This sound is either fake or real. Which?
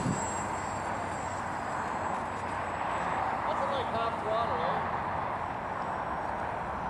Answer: real